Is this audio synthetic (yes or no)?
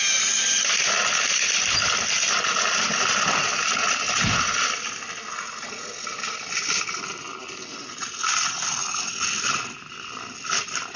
no